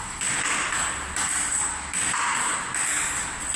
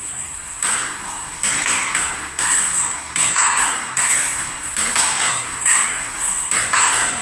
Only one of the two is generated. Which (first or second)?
second